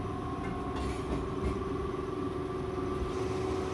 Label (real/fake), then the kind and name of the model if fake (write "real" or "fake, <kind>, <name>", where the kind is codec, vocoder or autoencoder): real